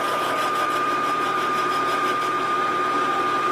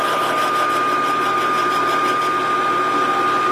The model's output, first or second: first